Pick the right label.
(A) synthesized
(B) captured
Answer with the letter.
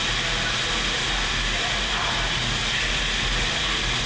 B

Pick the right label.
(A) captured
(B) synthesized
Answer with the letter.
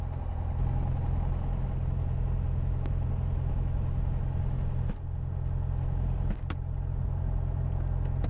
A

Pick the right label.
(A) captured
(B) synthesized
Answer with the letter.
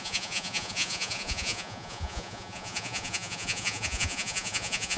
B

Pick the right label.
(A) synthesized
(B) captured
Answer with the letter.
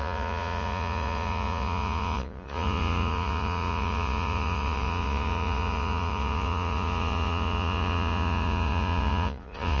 A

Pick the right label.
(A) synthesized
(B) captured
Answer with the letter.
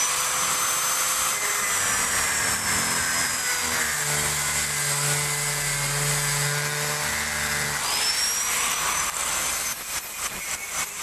B